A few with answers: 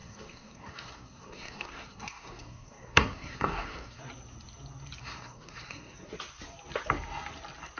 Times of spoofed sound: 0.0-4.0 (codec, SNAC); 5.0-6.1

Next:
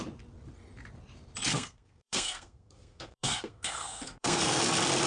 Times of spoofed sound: 1.5-4.6 (codec, SNAC)

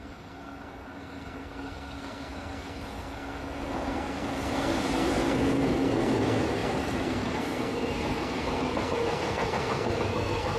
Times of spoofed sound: 0.0-10.6 (codec, SNAC)

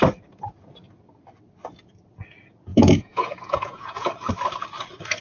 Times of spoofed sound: 2.7-4.1 (vocoder, Vocos)